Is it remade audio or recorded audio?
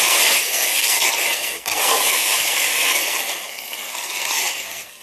remade